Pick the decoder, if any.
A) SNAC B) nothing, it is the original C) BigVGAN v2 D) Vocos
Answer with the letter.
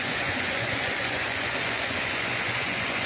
D